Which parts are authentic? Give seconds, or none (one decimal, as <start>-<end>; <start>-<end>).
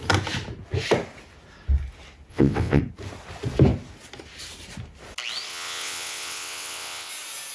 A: 0.0-2.3; 2.8-5.5; 7.1-7.5